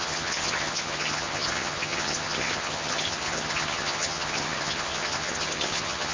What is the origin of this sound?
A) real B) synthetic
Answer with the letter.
B